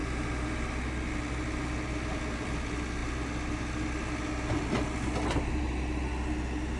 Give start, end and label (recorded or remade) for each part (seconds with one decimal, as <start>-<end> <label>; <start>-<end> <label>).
0.0-6.8 recorded